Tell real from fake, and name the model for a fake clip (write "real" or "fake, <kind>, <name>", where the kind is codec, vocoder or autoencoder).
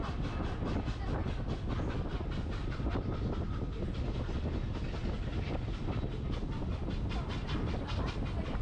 real